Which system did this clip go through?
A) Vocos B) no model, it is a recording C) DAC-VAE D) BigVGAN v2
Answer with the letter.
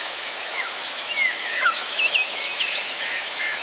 C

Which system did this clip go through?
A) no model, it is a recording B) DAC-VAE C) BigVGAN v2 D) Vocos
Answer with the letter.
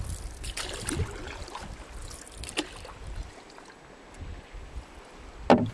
A